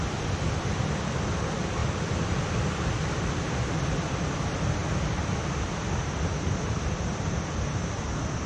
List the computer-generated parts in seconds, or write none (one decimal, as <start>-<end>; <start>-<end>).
0.0-8.5